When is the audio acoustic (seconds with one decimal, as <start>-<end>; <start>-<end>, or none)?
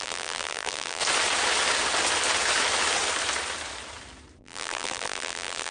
1.0-4.4